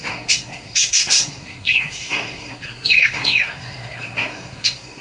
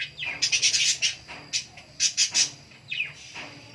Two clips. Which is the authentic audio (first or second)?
second